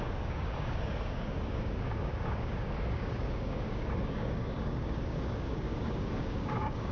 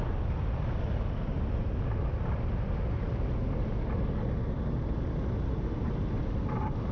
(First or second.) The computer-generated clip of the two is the first